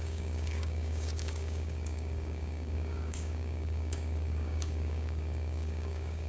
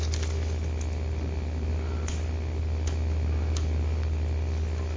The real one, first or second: second